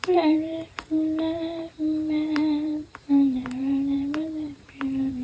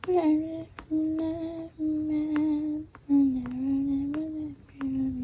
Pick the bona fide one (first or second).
second